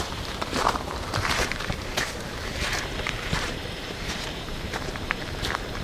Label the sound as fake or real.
fake